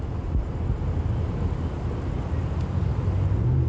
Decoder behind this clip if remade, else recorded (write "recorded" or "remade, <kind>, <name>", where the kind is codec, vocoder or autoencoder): recorded